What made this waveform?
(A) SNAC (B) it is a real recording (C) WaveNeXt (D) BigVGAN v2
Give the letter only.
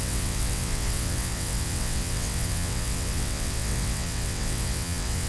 C